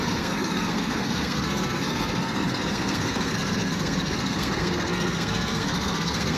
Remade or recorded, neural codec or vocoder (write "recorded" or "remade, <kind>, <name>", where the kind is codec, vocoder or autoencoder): remade, codec, SNAC